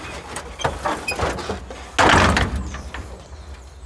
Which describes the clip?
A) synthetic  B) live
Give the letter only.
B